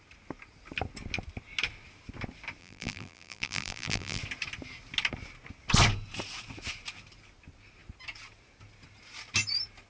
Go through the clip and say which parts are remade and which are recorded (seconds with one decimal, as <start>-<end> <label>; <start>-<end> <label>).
0.0-2.6 recorded; 2.6-4.2 remade; 4.2-9.9 recorded